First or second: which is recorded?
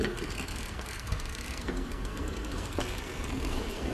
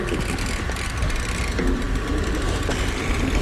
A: second